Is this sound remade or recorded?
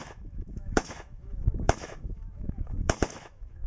remade